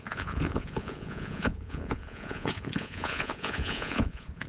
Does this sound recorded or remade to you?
remade